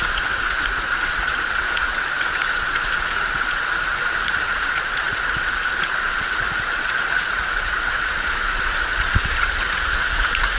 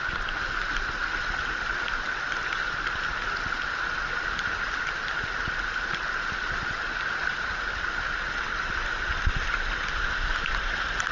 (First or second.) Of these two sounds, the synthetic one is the first